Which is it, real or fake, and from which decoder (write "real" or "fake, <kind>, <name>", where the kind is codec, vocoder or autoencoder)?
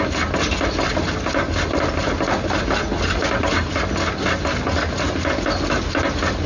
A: real